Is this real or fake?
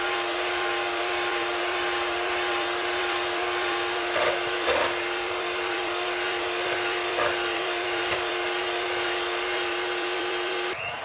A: fake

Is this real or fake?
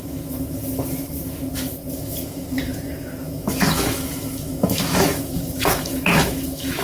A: fake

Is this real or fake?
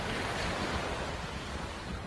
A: real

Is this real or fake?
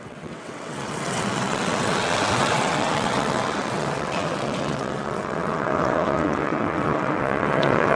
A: fake